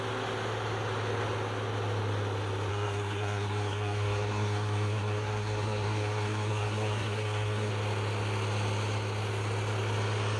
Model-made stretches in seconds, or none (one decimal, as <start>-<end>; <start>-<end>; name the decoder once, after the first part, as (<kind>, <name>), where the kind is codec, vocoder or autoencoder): 2.7-7.7 (codec, SNAC)